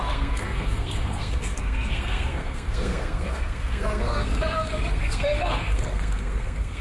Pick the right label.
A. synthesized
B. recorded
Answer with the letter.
A